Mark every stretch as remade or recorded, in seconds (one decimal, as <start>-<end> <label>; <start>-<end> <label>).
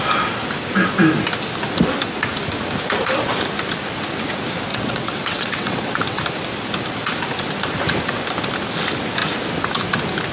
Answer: 0.0-4.7 recorded; 4.7-6.2 remade; 6.2-10.3 recorded